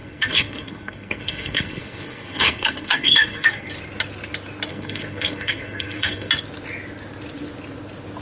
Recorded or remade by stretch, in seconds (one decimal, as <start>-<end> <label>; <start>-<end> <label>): 0.0-3.7 remade; 3.7-4.7 recorded; 4.7-6.3 remade; 6.3-8.2 recorded